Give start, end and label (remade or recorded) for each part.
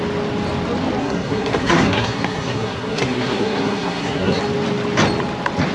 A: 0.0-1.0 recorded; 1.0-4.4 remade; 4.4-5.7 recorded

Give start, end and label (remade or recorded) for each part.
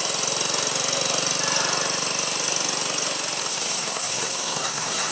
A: 0.0-3.5 recorded; 3.5-5.1 remade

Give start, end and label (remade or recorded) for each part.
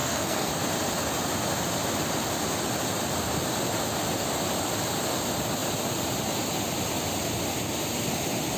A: 0.0-0.6 remade; 0.6-8.6 recorded